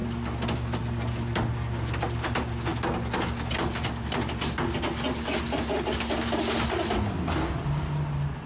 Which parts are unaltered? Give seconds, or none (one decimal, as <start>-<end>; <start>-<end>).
0.0-8.5